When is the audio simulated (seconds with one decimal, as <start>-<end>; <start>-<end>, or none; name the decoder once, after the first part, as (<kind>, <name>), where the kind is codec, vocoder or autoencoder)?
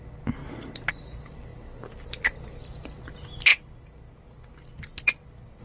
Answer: none